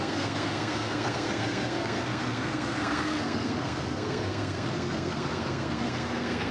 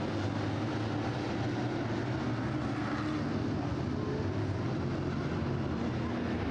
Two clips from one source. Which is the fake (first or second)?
first